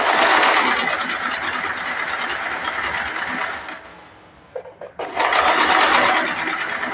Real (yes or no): yes